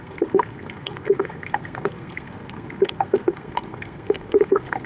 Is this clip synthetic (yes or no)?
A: yes